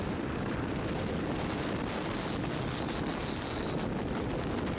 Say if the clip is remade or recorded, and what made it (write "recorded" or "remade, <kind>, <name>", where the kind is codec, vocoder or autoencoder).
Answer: recorded